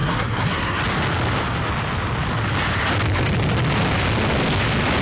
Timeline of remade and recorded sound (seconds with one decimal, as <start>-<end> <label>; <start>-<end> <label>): 0.0-0.8 remade; 0.8-5.0 recorded